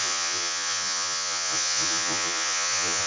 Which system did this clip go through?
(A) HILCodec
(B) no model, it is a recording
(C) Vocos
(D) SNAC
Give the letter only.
C